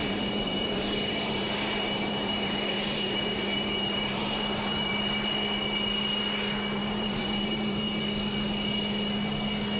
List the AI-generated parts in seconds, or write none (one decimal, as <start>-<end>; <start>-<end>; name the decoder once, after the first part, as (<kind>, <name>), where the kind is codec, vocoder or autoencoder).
0.0-4.9 (vocoder, BigVGAN v2); 6.8-8.0